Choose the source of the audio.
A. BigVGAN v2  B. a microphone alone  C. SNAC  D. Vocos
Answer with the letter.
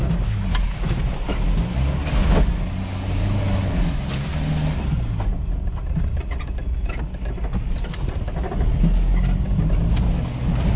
B